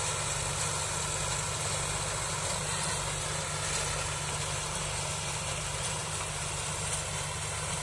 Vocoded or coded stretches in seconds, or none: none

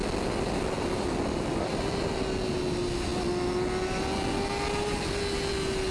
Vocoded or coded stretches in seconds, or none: none

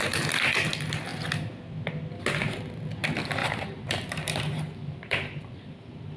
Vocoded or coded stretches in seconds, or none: 3.4-6.2 (vocoder, BigVGAN v2)

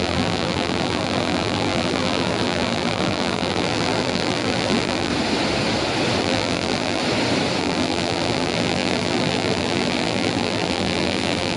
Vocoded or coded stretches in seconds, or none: 0.0-5.1 (vocoder, BigVGAN v2); 6.2-7.0; 7.6-11.6

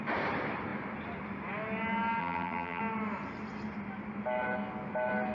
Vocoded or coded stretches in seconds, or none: 2.2-2.8 (vocoder, BigVGAN v2)